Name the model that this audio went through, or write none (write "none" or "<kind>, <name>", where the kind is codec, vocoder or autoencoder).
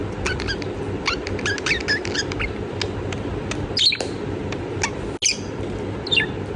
none